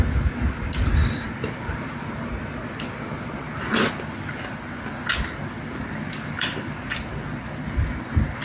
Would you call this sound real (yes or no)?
yes